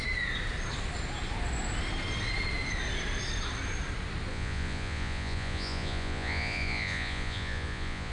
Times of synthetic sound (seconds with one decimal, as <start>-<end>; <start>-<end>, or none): 4.3-8.1